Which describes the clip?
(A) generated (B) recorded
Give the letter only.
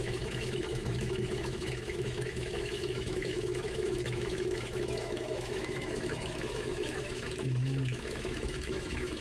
A